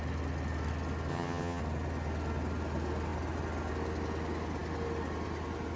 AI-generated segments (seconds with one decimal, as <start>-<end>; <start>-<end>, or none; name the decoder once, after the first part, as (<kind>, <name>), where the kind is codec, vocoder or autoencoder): 1.1-1.6 (vocoder, HiFi-GAN)